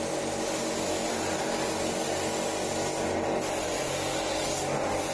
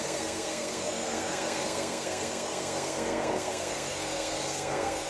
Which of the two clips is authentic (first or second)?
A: first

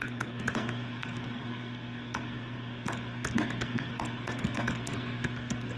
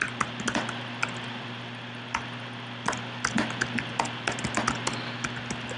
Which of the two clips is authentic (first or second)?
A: second